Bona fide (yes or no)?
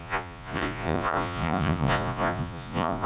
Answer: no